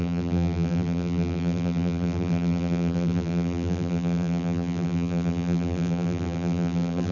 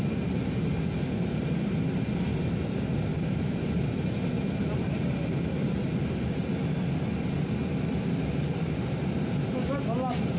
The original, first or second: second